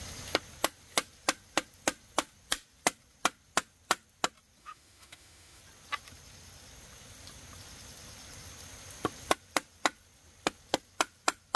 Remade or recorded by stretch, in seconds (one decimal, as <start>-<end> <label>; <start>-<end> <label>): 0.0-4.6 recorded; 4.6-5.6 remade; 5.6-11.6 recorded